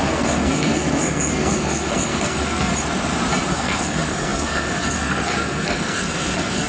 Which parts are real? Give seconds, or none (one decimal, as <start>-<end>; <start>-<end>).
2.7-3.5